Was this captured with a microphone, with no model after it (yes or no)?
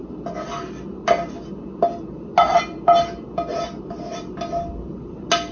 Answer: yes